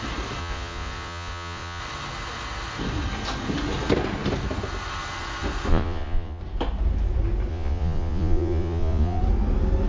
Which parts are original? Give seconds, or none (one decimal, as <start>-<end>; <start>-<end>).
0.0-0.4; 1.8-5.7; 6.4-7.5; 9.2-9.9